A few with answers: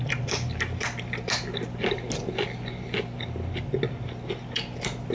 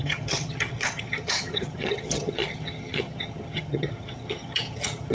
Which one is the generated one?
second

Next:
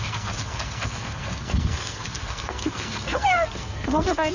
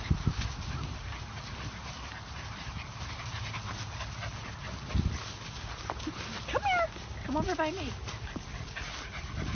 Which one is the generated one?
first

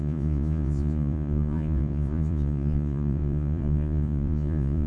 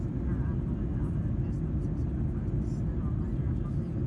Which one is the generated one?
first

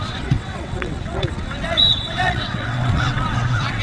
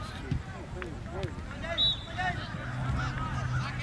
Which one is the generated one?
first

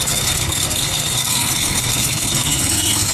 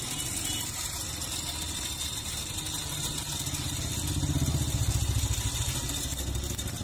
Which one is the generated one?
first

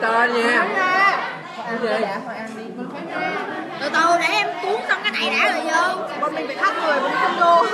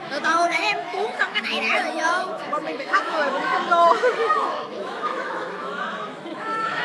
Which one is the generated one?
second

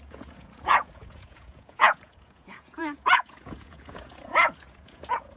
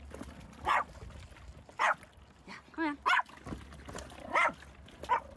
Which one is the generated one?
first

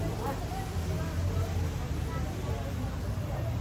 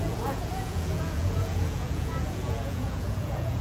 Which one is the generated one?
second